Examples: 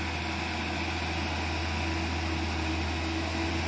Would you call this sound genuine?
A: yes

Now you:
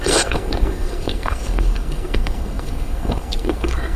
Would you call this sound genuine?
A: no